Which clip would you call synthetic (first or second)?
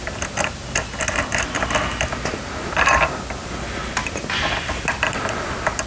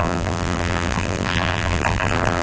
second